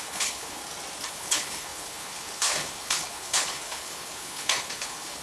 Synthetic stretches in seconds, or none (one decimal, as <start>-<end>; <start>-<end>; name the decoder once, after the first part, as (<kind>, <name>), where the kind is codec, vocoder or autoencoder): 0.0-0.6 (codec, HILCodec); 1.1-5.2